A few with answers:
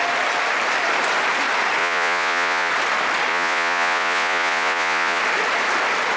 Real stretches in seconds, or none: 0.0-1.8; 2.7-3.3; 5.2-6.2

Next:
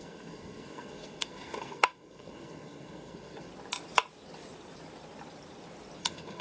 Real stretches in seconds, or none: 3.5-6.0

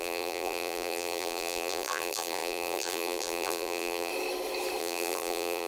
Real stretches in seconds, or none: 4.1-4.8

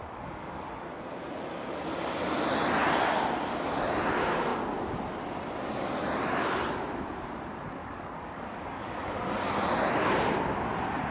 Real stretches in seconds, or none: 0.7-7.8; 9.7-11.1

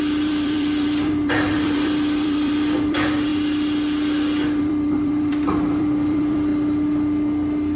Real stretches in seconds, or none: 3.3-4.6; 6.5-7.8